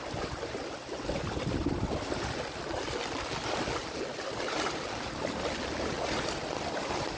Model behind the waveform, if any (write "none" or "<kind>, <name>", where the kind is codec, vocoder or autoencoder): none